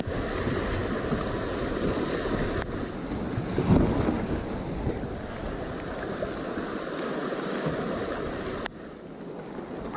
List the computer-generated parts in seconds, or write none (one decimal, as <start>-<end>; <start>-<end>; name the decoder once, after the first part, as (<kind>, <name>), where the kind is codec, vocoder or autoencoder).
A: none